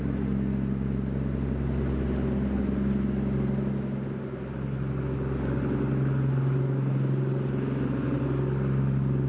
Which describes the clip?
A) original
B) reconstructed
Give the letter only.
A